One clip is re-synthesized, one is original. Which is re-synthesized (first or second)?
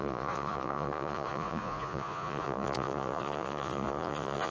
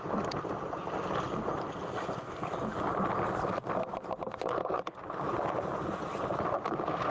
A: first